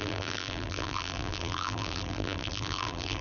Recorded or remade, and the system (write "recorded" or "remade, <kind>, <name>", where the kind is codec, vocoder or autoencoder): remade, vocoder, BigVGAN v2